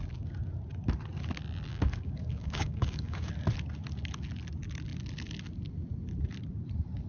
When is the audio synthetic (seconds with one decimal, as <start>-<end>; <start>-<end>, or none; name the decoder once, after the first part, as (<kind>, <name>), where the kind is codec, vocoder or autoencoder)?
1.7-3.3 (codec, DAC)

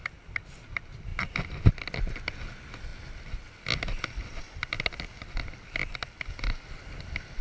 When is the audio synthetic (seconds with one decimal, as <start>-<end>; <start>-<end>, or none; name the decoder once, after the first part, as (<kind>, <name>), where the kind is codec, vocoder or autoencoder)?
none